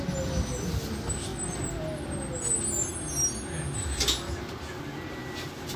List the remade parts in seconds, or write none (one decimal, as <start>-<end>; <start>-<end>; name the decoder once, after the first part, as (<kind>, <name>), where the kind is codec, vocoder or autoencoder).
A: none